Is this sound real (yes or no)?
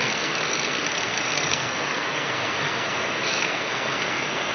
no